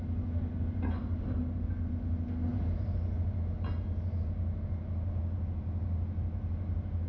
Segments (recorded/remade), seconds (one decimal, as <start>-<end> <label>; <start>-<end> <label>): 0.0-7.1 recorded